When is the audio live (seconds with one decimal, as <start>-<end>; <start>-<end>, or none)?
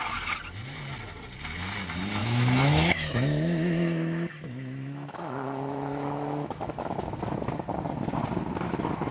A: 0.0-2.2; 7.2-9.1